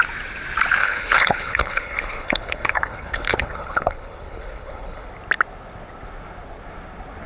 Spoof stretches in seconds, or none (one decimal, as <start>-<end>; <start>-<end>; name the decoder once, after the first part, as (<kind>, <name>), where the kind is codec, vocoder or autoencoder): 0.8-5.1 (codec, HILCodec)